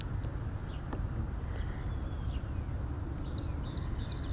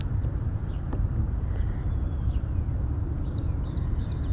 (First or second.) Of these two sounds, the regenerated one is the second